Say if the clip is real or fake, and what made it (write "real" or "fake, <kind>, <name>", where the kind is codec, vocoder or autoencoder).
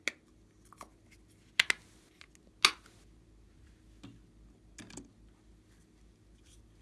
real